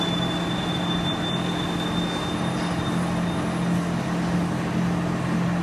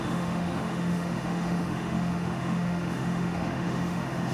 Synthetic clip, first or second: second